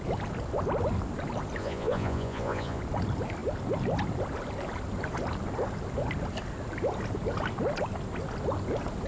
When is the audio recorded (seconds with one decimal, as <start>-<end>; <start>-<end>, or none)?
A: 0.0-1.6; 2.8-9.1